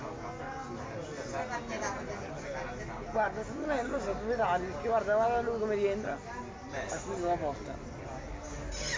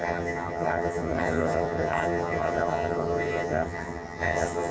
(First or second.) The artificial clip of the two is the second